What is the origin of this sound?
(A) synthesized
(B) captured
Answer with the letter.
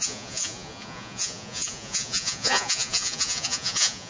A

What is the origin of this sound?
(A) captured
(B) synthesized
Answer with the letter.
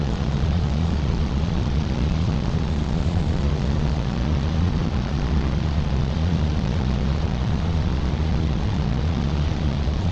B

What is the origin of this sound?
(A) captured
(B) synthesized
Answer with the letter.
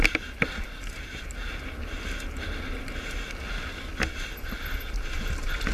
A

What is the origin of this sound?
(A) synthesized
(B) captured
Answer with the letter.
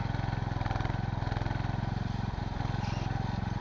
B